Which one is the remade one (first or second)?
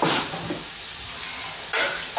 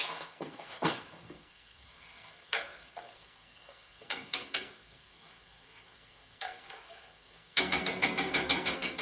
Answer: second